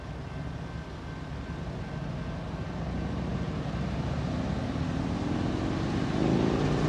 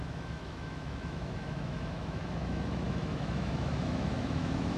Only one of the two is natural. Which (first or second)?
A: first